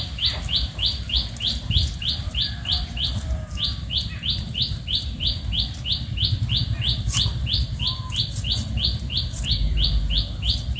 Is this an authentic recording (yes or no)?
yes